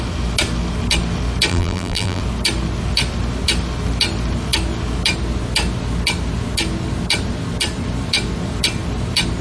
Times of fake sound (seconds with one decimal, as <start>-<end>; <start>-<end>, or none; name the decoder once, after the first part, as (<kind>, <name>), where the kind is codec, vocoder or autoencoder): 1.5-2.2 (vocoder, BigVGAN v2)